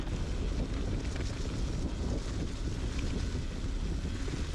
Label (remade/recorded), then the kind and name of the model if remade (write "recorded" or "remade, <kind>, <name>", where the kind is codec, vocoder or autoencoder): recorded